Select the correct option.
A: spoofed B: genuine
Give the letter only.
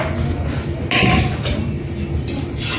B